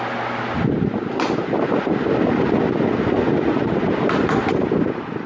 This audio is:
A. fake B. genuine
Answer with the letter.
B